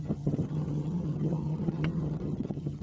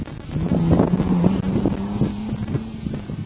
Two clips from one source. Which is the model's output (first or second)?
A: first